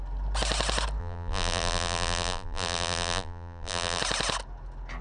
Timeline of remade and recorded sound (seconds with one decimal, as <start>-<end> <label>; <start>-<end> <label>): 0.0-1.0 recorded; 1.0-4.0 remade; 4.0-5.0 recorded

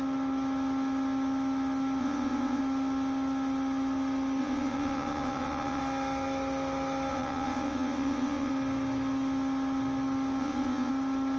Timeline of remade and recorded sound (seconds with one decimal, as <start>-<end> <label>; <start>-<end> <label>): 0.0-2.0 recorded; 2.0-2.6 remade; 2.6-4.4 recorded; 4.4-5.8 remade; 5.8-7.1 recorded; 7.1-8.5 remade; 8.5-10.4 recorded; 10.4-10.9 remade; 10.9-11.4 recorded

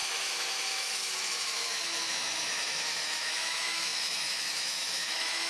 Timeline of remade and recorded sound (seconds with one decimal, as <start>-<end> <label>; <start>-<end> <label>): 0.0-5.5 remade

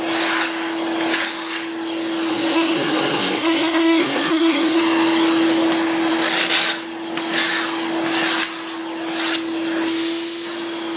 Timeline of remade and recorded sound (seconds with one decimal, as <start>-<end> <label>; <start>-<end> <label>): 0.0-2.3 recorded; 2.3-4.8 remade; 4.8-11.0 recorded

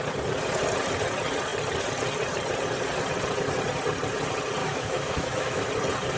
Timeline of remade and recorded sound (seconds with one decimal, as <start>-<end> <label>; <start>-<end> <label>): 0.0-4.6 recorded; 4.6-5.7 remade; 5.7-6.2 recorded